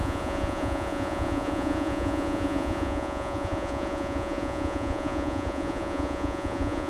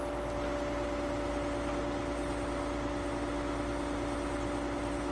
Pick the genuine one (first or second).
second